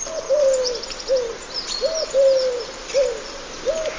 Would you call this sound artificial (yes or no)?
no